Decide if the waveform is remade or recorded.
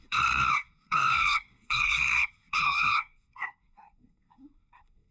remade